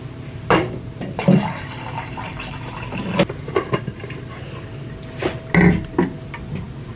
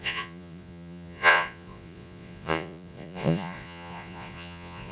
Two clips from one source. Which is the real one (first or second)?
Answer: first